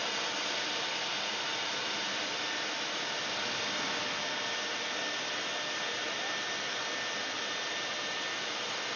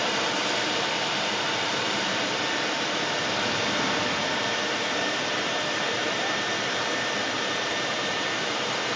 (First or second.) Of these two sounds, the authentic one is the first